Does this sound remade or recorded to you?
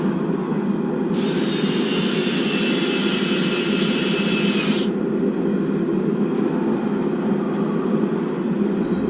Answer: recorded